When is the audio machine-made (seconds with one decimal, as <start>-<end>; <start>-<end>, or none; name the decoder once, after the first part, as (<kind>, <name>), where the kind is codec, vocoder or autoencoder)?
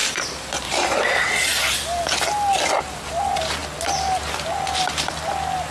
0.0-1.0 (vocoder, BigVGAN v2)